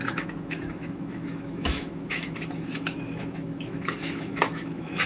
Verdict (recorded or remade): remade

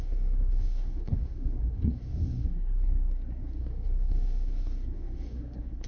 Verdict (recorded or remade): remade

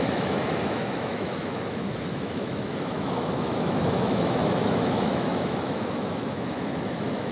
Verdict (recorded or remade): remade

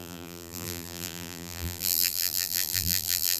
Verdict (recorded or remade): remade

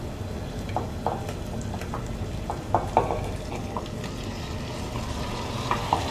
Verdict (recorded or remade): recorded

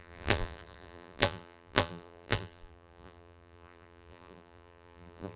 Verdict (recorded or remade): remade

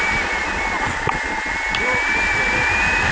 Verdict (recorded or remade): recorded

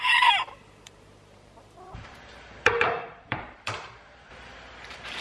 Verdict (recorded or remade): remade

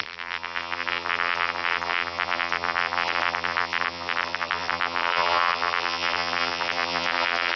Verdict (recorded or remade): remade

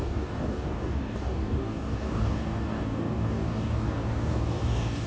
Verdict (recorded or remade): remade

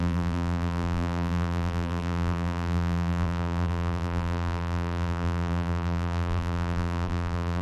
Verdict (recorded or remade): remade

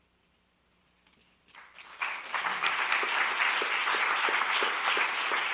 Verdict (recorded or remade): recorded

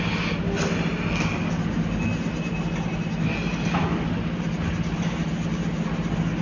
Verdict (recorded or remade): recorded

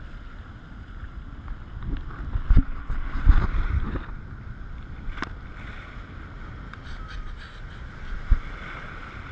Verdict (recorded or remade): recorded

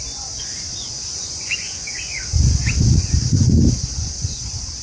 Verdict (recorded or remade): remade